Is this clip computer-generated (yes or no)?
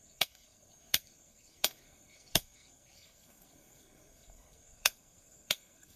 yes